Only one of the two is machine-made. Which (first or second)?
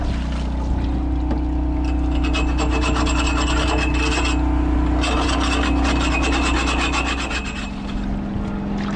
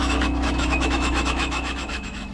second